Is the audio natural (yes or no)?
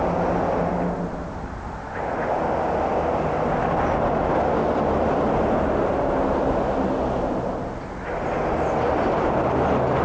yes